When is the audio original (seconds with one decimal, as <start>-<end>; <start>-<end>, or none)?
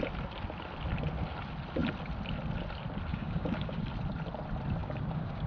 0.0-3.1; 3.9-4.8